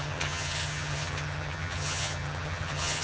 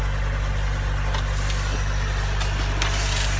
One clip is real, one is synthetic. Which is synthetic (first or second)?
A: first